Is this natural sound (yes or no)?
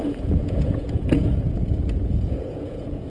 no